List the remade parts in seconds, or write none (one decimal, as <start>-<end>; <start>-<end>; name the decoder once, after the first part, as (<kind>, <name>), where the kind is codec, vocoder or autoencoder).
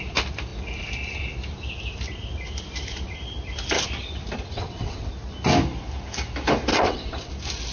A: 4.5-5.1 (vocoder, WaveNeXt); 6.7-7.3